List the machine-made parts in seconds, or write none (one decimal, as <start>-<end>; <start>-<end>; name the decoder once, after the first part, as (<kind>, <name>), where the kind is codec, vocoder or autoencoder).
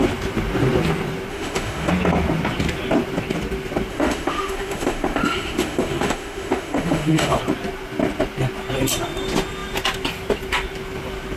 1.3-1.9 (autoencoder, DAC-VAE); 3.9-7.4